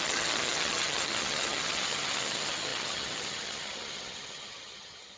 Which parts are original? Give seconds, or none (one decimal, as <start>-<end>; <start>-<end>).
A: none